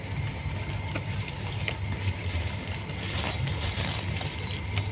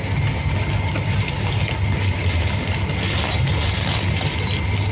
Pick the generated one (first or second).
first